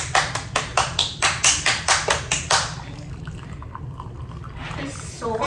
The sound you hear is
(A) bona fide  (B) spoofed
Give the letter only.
A